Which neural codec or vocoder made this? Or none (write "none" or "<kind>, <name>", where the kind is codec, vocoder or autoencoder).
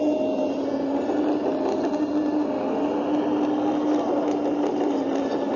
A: none